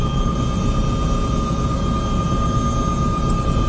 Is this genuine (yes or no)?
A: yes